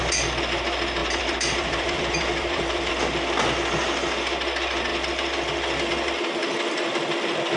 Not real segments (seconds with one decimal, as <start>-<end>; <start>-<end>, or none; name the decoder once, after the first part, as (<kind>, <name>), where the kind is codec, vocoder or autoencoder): 1.0-2.9 (vocoder, BigVGAN v2); 6.4-7.1